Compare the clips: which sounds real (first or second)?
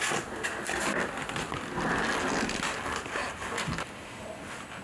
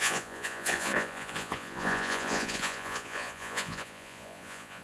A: first